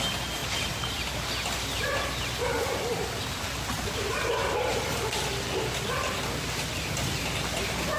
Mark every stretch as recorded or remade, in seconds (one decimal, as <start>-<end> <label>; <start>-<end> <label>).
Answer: 0.0-8.0 recorded